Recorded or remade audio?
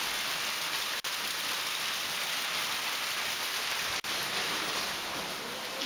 recorded